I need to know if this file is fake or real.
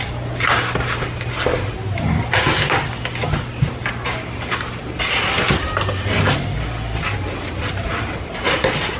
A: real